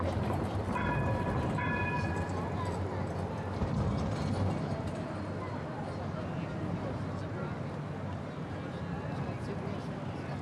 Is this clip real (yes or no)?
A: yes